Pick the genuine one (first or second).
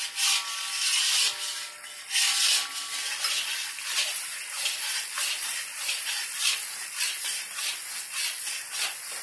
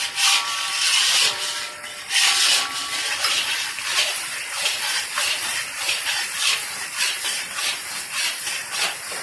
first